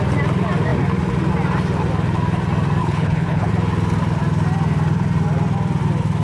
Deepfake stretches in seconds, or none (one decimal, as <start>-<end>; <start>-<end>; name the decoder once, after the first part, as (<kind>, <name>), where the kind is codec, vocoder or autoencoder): 2.8-3.5 (codec, HILCodec)